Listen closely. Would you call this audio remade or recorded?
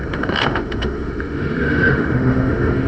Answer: remade